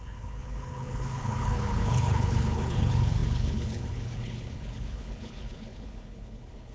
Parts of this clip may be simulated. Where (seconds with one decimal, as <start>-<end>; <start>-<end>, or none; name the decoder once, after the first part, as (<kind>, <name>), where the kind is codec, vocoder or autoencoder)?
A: 0.0-6.7 (codec, HILCodec)